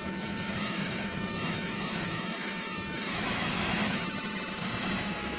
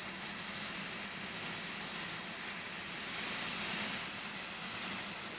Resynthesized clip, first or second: first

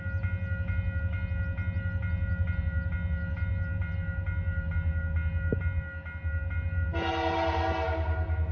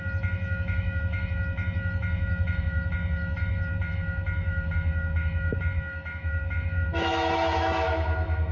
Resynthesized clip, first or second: second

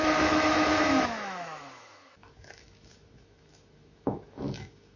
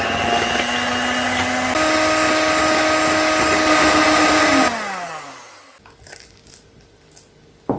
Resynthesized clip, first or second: first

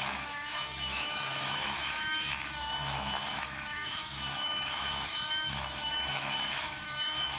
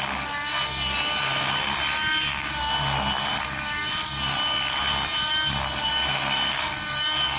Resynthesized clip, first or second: first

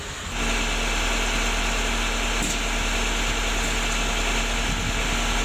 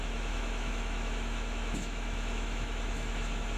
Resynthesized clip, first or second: second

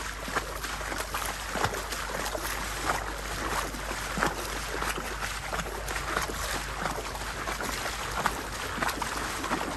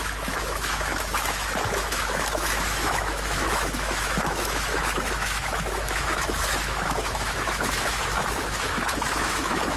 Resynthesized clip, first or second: second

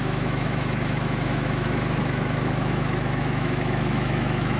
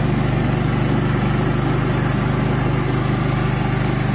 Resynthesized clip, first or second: first